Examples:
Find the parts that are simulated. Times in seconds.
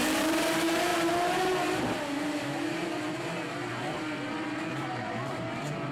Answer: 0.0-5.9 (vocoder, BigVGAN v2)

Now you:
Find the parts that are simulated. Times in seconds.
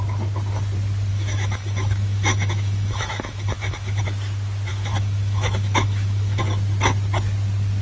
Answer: 1.1-4.0 (autoencoder, DAC-VAE); 4.7-6.4